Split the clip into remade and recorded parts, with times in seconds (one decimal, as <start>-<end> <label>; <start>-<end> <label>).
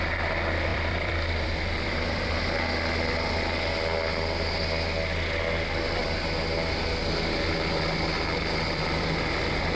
0.0-0.7 recorded; 0.7-2.4 remade; 2.4-9.8 recorded